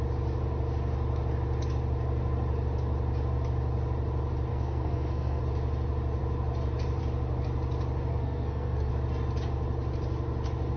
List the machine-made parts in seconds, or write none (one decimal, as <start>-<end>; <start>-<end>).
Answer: 4.5-5.4; 8.1-8.9